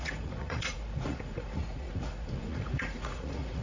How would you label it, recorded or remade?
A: remade